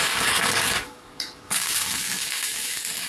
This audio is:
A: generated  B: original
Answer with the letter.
A